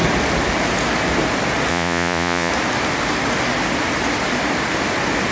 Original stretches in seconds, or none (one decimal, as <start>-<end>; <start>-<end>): 0.0-1.7; 2.5-5.3